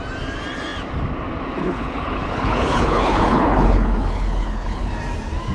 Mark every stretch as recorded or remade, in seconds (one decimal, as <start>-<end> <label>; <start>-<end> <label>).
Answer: 0.0-1.6 recorded; 1.6-4.9 remade; 4.9-5.5 recorded